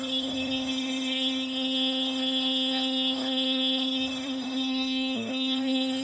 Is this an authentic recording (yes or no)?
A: no